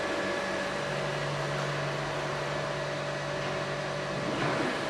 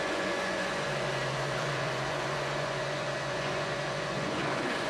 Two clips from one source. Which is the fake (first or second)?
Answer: second